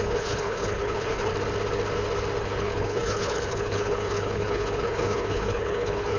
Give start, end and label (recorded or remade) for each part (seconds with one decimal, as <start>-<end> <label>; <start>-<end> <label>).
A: 0.0-1.3 remade; 1.3-2.4 recorded; 2.4-6.2 remade